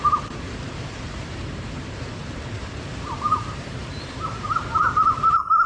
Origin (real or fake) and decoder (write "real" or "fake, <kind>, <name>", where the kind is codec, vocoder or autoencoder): fake, vocoder, BigVGAN v2